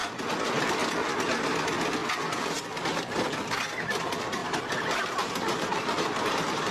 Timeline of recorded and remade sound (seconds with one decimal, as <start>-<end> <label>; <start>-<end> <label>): 0.0-4.4 recorded; 4.4-6.7 remade